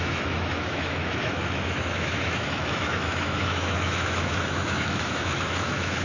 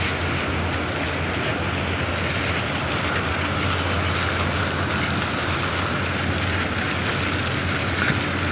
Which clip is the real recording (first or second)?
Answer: second